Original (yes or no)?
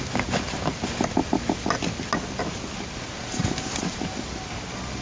yes